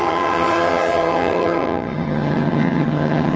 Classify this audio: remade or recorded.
remade